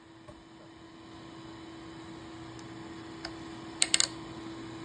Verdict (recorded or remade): recorded